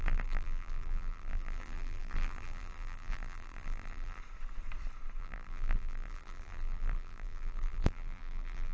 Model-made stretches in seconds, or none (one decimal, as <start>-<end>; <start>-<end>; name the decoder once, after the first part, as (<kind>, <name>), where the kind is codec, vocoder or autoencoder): 0.0-4.2 (vocoder, BigVGAN v2); 5.2-8.7